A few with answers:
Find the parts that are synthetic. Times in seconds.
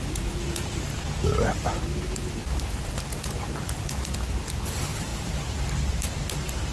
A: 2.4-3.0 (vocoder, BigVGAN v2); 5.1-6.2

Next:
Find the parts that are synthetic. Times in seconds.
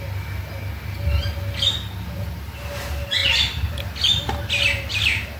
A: none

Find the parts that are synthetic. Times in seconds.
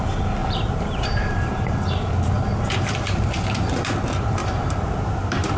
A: 0.4-1.8 (vocoder, BigVGAN v2); 4.4-5.6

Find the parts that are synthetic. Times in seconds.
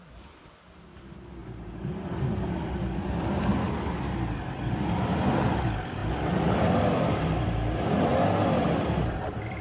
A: 0.0-1.4 (vocoder, BigVGAN v2); 2.5-3.5; 4.6-8.1; 8.6-9.6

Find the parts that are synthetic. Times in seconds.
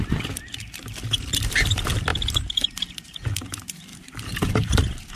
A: 2.1-2.9 (vocoder, BigVGAN v2); 3.9-4.8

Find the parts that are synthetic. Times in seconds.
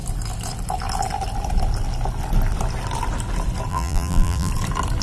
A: 3.7-4.5 (vocoder, BigVGAN v2)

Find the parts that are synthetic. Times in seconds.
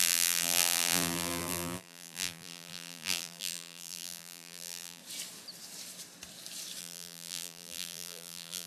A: 0.0-5.0 (vocoder, BigVGAN v2); 6.8-8.7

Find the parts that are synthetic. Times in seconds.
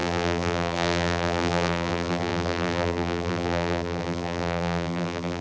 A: 0.0-5.4 (vocoder, BigVGAN v2)